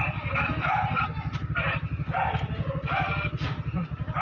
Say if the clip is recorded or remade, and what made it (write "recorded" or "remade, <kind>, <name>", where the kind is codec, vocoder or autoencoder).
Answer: recorded